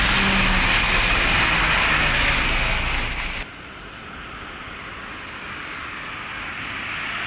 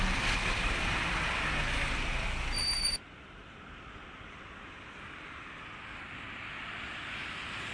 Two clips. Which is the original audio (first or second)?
first